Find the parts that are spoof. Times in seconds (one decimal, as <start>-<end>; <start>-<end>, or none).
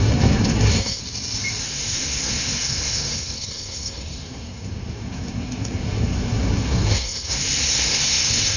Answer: 0.0-1.0; 1.6-8.6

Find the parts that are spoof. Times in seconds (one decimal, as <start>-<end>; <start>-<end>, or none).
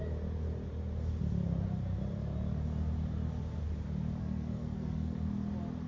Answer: 4.2-5.3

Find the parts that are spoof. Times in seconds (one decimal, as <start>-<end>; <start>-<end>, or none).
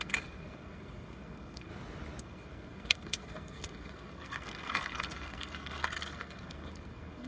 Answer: 0.0-1.7; 2.2-7.3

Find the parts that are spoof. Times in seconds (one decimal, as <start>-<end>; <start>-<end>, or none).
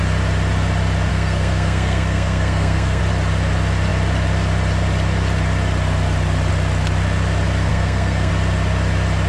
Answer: 1.1-3.0; 7.7-8.3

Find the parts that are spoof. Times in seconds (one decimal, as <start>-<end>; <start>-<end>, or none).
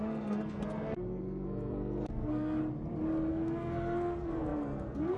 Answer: 0.0-2.6; 3.3-5.2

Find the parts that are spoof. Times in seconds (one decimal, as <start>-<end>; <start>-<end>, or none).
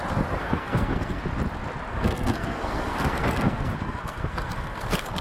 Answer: 0.4-1.2; 1.9-5.2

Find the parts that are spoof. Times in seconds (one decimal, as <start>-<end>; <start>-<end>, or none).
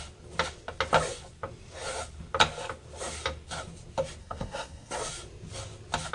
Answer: 4.2-4.9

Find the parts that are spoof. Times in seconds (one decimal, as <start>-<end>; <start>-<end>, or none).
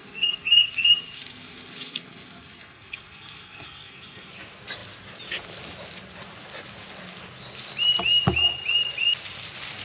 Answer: 0.0-4.3